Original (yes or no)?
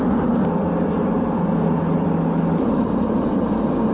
yes